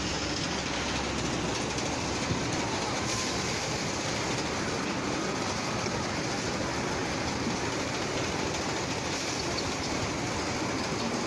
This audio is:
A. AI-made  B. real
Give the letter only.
B